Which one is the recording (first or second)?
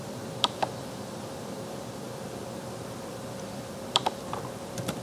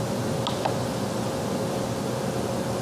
second